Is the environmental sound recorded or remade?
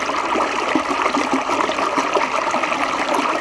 remade